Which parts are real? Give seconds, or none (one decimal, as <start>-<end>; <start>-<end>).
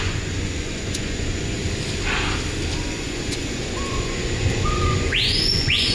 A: 1.6-2.8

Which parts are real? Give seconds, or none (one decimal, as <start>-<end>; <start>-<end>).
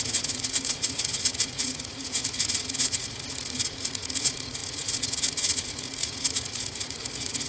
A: none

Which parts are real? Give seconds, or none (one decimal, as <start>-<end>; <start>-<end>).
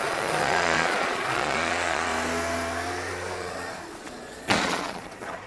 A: 2.1-3.4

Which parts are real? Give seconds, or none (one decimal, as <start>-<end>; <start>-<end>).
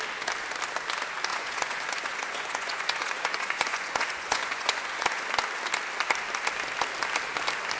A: 0.0-1.3; 5.2-7.8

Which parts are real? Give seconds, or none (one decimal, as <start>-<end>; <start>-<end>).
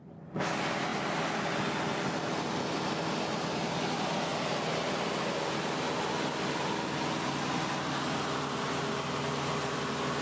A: 0.0-10.2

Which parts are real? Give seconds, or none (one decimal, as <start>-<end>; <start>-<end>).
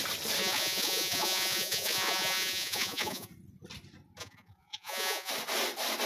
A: 0.0-0.4; 3.3-4.2; 5.3-6.1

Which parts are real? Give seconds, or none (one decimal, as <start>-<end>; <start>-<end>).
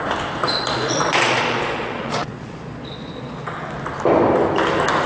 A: 0.0-0.4; 3.5-5.1